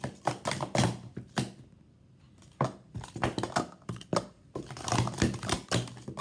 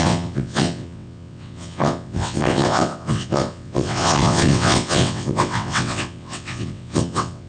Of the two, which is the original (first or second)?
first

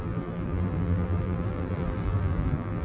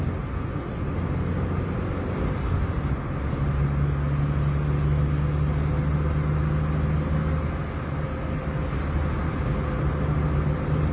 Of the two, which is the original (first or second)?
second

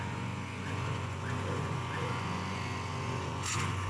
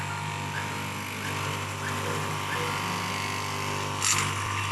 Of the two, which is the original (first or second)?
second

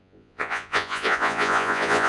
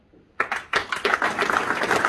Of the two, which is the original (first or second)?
second